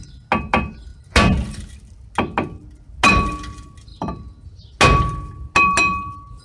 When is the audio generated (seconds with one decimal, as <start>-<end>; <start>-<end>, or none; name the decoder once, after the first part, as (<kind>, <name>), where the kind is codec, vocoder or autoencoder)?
none